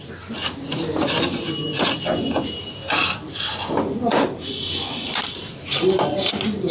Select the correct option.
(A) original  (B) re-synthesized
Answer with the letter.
A